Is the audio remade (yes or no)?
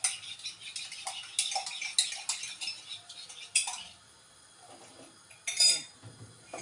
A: no